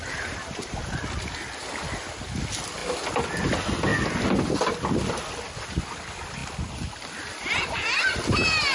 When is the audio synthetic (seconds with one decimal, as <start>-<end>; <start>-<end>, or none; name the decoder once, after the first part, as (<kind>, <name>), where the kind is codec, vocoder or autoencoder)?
0.0-1.0 (vocoder, BigVGAN v2)